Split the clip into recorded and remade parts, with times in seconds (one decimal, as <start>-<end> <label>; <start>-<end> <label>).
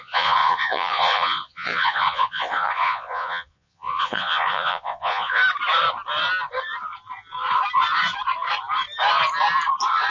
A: 0.0-5.4 remade; 5.4-10.1 recorded